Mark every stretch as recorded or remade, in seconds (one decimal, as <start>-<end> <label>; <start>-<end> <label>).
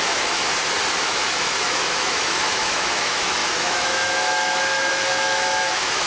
0.0-0.4 remade; 0.4-1.0 recorded; 1.0-6.1 remade